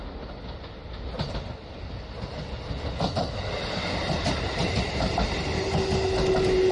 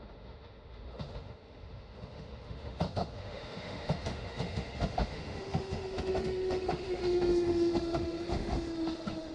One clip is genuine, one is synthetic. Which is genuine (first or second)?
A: first